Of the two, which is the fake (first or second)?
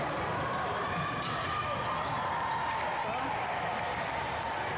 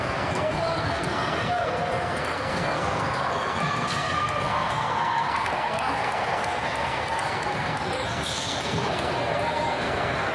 second